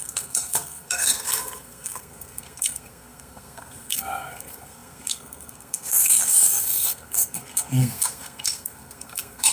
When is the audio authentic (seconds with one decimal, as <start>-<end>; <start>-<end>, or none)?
none